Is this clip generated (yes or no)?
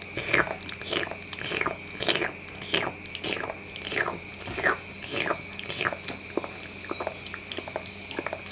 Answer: no